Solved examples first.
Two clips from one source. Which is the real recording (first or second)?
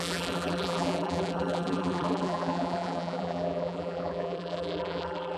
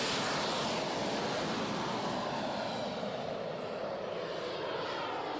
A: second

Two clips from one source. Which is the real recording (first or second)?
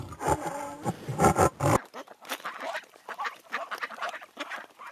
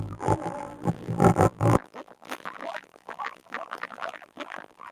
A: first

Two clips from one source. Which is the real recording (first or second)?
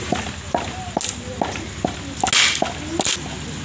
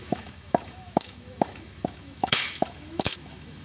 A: first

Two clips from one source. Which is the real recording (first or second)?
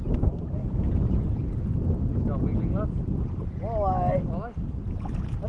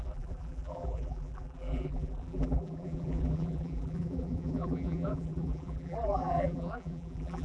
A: first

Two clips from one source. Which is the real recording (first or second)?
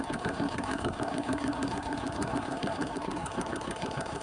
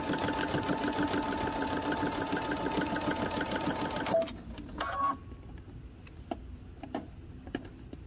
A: second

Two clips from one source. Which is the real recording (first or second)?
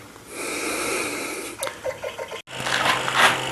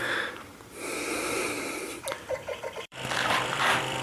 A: first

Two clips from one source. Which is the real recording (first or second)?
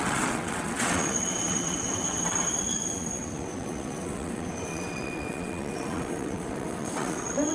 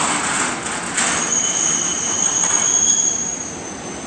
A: second